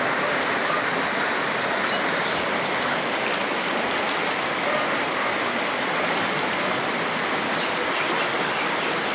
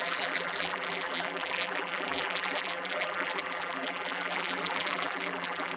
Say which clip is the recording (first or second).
first